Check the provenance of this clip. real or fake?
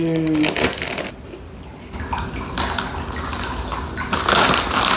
real